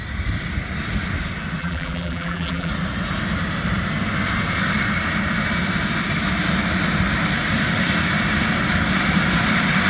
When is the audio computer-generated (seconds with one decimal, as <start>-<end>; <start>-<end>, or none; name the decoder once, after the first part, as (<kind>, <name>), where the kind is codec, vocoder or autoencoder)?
1.6-2.7 (vocoder, BigVGAN v2)